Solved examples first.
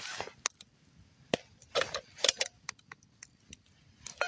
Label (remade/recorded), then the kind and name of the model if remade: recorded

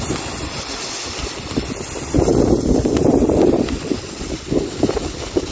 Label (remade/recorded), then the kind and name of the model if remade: recorded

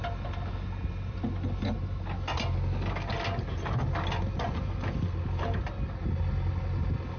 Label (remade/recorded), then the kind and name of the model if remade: recorded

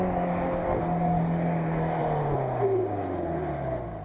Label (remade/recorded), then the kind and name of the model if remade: recorded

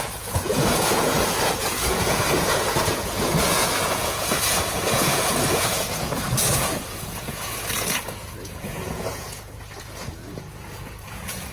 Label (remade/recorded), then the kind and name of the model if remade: remade, vocoder, Vocos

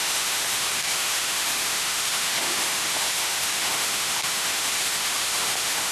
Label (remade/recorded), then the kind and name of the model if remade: remade, autoencoder, DAC-VAE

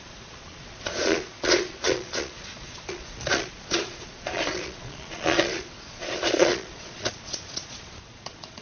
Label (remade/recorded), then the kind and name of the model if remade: remade, vocoder, Vocos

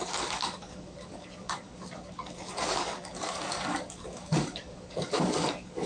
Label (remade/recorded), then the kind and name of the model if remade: remade, codec, DAC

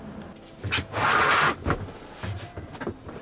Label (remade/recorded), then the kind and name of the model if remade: recorded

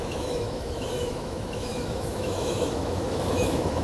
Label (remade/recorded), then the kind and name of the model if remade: remade, autoencoder, DAC-VAE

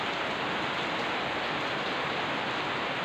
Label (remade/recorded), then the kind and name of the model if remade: recorded